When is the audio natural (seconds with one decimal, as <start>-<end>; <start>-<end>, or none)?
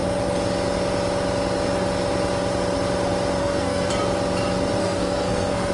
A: 0.0-3.4; 3.9-4.8